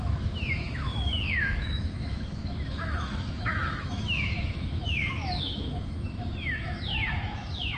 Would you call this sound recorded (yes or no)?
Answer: no